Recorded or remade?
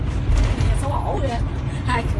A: recorded